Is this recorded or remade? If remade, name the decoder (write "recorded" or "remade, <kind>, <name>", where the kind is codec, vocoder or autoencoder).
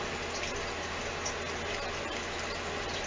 recorded